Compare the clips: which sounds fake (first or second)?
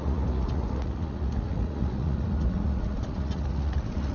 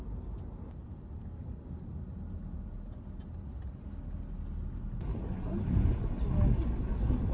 first